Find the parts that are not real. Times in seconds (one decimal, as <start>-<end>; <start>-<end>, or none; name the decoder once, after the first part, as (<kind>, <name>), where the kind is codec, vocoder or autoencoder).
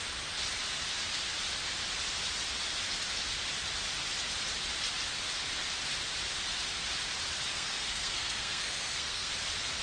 7.5-9.3 (codec, SNAC)